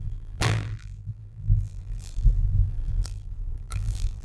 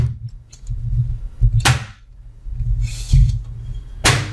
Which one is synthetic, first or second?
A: first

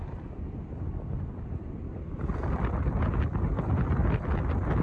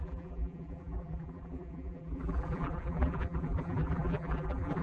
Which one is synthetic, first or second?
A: second